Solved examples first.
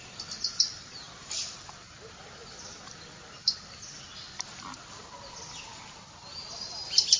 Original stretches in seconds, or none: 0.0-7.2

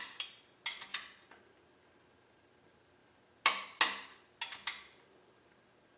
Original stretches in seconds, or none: 0.0-6.0

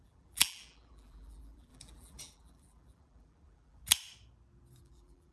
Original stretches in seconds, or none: 3.8-4.8

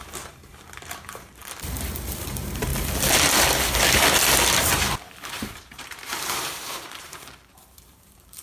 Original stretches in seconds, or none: 1.4-2.3; 2.7-5.3

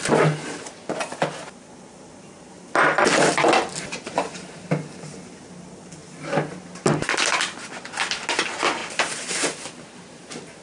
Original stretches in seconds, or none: 0.0-10.6

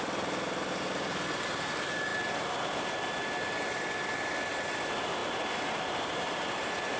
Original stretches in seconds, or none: 0.0-7.0

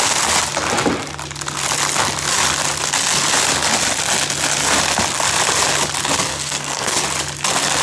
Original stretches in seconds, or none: 0.0-6.3; 7.0-7.8

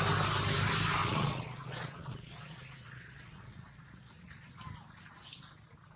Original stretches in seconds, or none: 0.0-1.0; 4.1-6.0